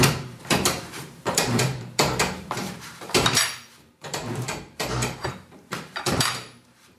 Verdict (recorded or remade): remade